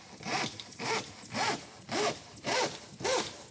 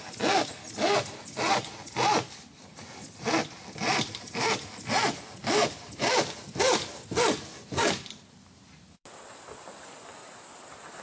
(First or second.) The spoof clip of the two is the first